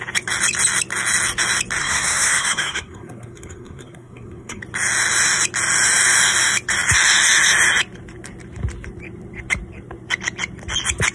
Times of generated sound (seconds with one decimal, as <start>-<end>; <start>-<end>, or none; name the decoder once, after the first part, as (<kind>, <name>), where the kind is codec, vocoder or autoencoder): 1.8-4.6 (codec, SNAC)